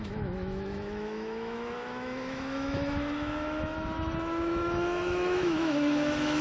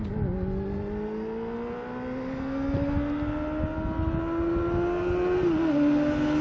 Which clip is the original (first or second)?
second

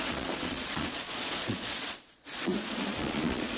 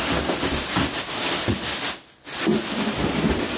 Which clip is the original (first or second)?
second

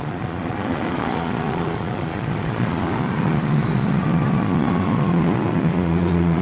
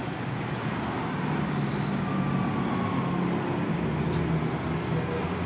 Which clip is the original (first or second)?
second